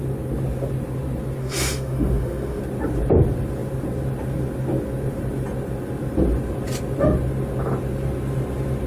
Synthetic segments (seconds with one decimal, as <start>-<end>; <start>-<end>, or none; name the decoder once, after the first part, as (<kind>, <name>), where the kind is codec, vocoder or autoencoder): 1.4-2.6 (autoencoder, DAC-VAE)